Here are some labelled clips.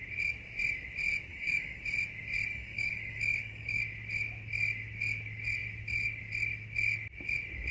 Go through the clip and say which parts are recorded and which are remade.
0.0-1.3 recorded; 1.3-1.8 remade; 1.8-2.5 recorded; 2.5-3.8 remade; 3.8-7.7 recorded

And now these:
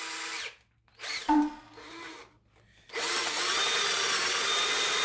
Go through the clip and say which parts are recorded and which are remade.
0.0-5.0 recorded